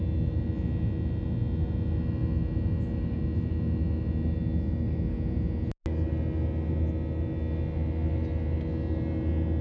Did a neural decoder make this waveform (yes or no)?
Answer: no